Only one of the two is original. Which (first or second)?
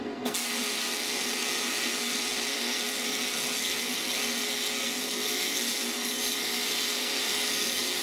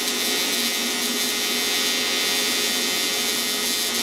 second